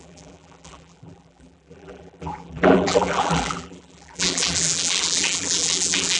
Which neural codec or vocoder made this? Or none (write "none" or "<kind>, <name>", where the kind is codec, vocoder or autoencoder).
vocoder, BigVGAN v2